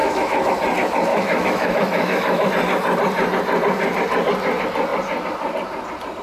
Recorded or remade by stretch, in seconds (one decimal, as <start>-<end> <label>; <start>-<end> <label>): 0.0-0.5 remade; 0.5-1.1 recorded; 1.1-2.5 remade; 2.5-6.2 recorded